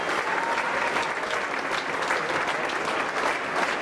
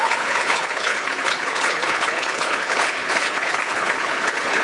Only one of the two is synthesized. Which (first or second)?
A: second